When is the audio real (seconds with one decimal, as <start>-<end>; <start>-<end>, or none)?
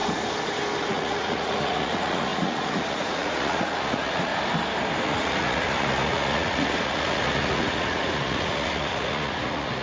0.0-0.9; 4.3-5.0